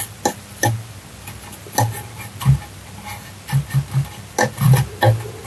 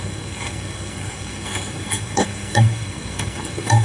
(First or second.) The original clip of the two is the first